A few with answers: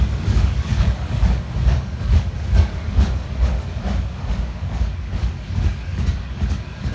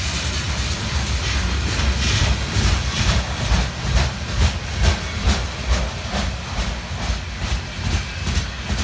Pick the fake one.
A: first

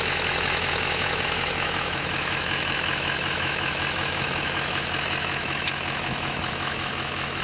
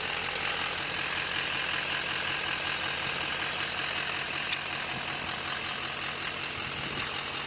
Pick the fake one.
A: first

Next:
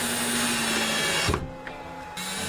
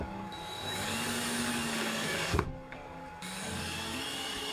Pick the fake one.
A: second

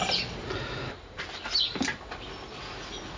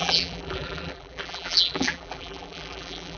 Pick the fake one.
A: second